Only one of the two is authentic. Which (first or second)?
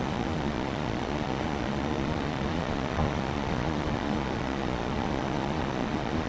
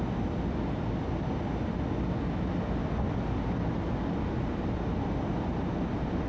second